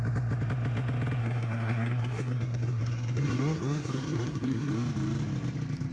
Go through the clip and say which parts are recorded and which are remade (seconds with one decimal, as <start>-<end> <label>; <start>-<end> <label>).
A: 0.0-1.2 recorded; 1.2-4.7 remade; 4.7-5.9 recorded